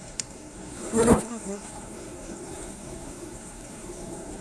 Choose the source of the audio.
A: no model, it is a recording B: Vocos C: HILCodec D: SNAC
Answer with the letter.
D